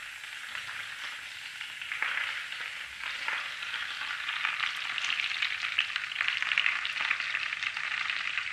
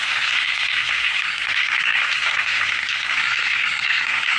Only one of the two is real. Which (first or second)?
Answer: first